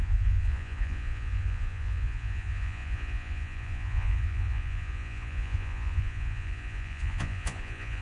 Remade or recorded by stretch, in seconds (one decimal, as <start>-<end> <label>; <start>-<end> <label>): 0.0-8.0 remade

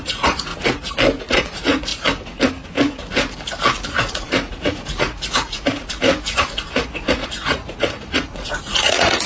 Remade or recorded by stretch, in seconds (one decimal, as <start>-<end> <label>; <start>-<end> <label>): 0.0-0.5 remade; 0.5-1.2 recorded; 1.2-1.9 remade; 1.9-4.0 recorded; 4.0-9.3 remade

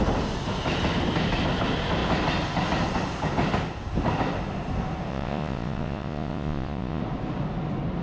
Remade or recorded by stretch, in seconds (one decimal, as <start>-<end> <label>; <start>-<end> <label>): 0.0-5.1 recorded; 5.1-7.0 remade; 7.0-8.0 recorded

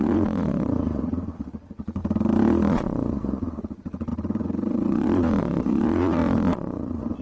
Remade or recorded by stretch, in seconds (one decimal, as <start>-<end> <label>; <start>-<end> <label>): 0.0-2.0 remade; 2.0-2.7 recorded; 2.7-7.2 remade

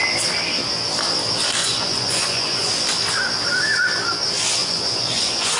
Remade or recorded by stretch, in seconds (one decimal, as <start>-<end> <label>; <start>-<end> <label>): 0.0-1.6 recorded; 1.6-2.7 remade; 2.7-4.6 recorded; 4.6-5.6 remade

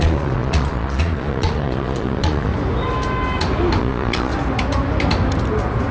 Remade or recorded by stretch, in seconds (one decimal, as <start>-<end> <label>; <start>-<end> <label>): 0.0-2.5 remade; 2.5-3.8 recorded; 3.8-4.3 remade; 4.3-5.9 recorded